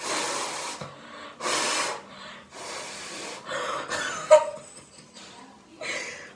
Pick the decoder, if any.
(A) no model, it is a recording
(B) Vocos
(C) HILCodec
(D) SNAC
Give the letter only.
A